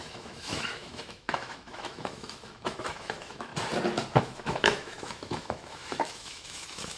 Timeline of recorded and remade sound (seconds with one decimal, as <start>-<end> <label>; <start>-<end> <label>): 0.0-3.5 remade; 3.5-4.2 recorded; 4.2-7.0 remade